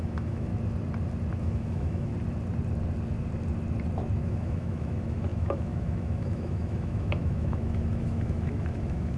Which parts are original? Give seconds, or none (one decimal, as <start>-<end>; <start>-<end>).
0.5-1.3; 2.1-4.2